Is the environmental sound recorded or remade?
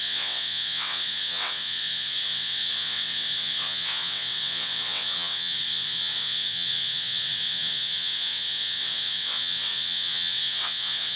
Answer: remade